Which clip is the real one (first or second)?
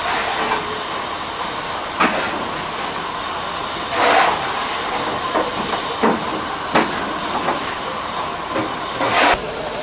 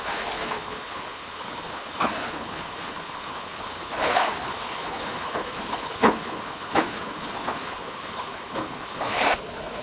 first